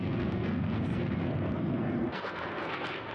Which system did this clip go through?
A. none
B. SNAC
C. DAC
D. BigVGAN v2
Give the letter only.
B